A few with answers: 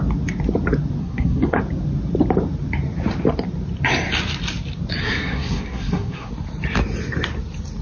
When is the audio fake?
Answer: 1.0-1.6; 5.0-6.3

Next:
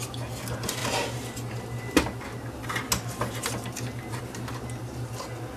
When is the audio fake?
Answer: none

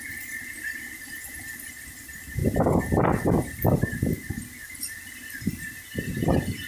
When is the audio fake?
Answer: none

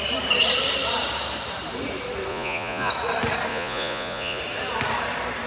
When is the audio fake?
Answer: 2.3-2.9; 3.5-4.4

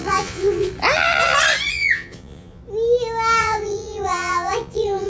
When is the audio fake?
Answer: 0.0-0.7; 1.7-2.6; 3.4-5.1